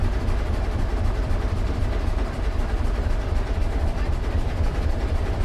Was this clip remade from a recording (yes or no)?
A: yes